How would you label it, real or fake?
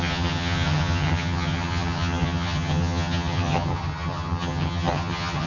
fake